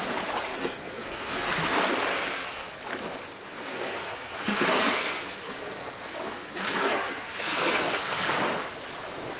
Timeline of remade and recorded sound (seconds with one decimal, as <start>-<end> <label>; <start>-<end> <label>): 0.0-0.5 recorded; 0.5-1.5 remade; 1.5-2.1 recorded; 2.1-2.8 remade; 2.8-3.3 recorded; 3.3-8.3 remade; 8.3-9.4 recorded